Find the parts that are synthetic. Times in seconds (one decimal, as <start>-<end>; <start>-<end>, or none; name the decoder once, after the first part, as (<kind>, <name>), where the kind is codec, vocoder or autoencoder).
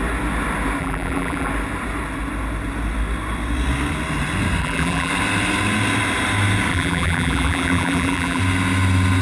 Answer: 0.8-1.5 (vocoder, BigVGAN v2); 4.6-5.1; 6.7-8.4